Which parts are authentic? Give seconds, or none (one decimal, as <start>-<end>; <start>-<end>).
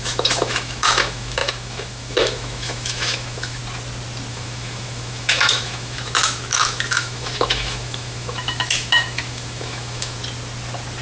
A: 3.6-4.3; 10.2-11.0